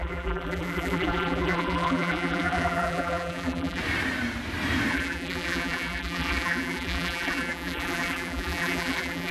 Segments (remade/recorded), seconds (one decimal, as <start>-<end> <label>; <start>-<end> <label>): 0.0-3.8 remade; 3.8-4.9 recorded; 4.9-9.3 remade